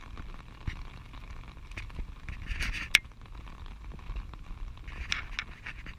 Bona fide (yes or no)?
yes